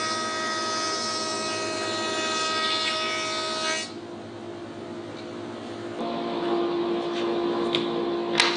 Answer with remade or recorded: recorded